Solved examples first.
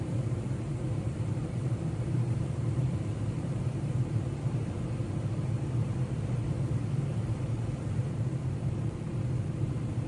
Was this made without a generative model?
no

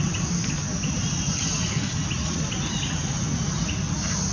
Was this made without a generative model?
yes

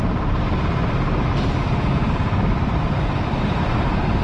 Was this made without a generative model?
no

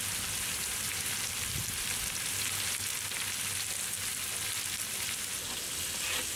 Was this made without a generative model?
yes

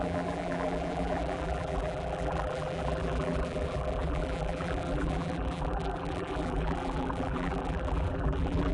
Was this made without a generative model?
no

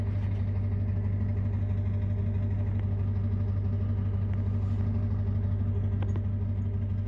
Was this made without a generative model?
yes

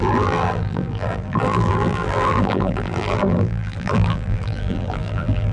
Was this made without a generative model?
no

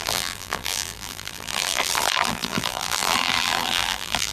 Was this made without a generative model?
no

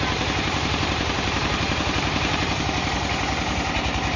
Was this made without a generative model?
no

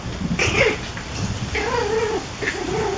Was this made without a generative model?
yes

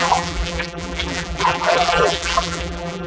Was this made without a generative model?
no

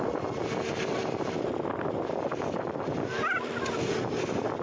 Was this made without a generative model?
yes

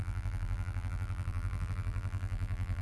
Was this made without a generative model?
no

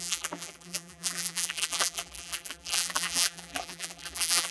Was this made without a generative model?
no